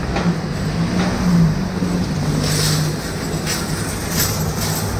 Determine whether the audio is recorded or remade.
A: recorded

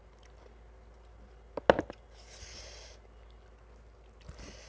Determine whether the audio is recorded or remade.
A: recorded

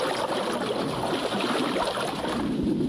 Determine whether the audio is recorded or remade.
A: recorded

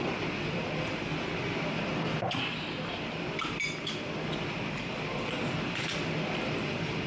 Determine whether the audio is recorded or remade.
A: remade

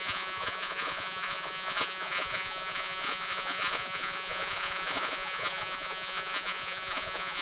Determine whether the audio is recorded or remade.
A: remade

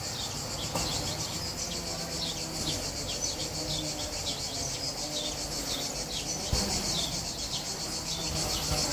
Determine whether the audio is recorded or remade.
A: recorded